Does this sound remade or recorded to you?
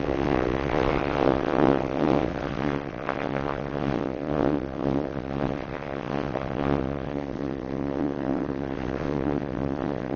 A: remade